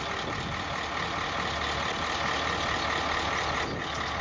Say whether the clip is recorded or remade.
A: recorded